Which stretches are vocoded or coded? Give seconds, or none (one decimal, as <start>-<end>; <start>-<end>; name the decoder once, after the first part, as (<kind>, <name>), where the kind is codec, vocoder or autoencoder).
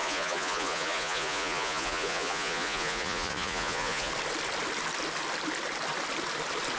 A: 0.0-4.1 (vocoder, Vocos)